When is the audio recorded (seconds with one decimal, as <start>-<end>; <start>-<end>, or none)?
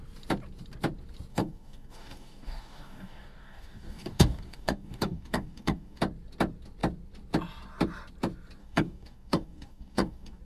0.0-1.3; 6.0-8.6